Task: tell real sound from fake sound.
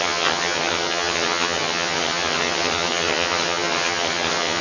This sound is fake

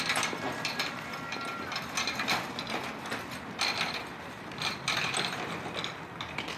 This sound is real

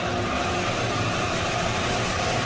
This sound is real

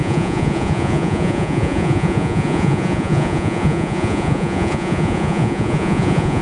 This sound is fake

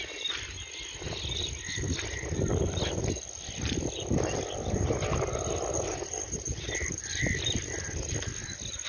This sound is real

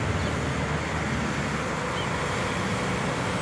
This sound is real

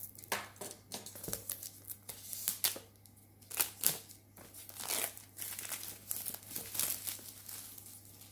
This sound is real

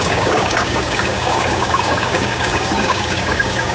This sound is fake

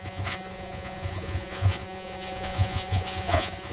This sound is fake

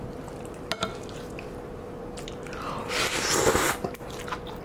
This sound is real